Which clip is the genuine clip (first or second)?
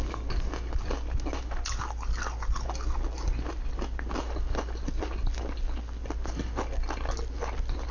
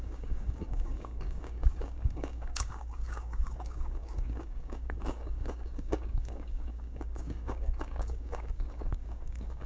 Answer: first